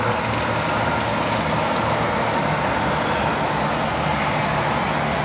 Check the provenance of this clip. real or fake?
real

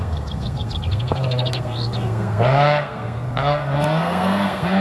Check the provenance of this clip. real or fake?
fake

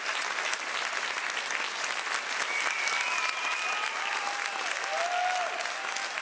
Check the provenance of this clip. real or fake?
real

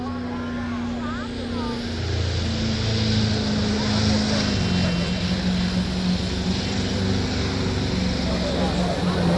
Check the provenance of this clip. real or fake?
real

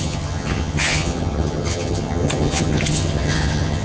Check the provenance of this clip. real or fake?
fake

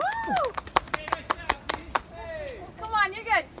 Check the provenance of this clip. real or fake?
real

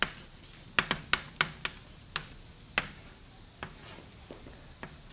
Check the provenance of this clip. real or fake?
real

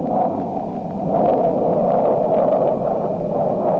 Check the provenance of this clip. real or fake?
real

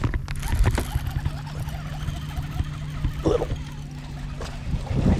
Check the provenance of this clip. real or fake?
real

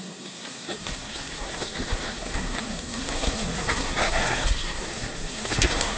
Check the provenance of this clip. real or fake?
fake